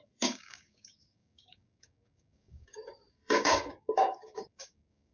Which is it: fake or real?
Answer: fake